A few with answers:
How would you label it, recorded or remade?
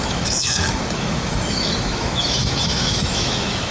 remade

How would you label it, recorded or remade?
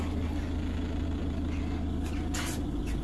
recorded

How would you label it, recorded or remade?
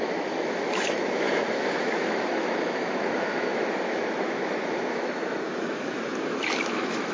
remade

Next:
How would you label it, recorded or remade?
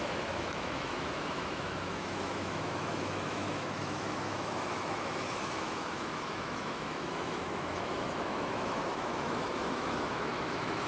remade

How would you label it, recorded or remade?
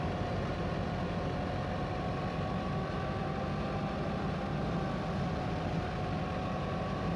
recorded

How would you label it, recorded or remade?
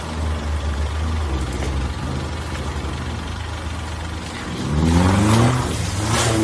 recorded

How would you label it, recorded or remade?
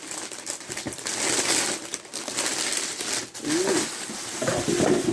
recorded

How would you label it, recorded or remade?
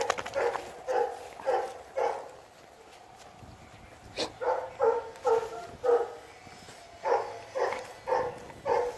recorded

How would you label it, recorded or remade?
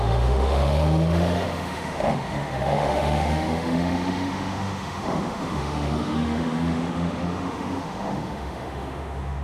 remade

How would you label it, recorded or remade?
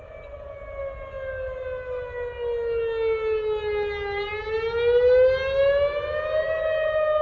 recorded